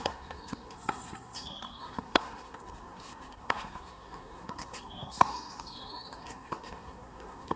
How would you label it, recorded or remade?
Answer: remade